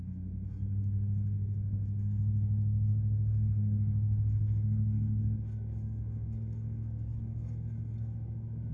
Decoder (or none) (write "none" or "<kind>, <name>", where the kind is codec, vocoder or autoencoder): codec, SNAC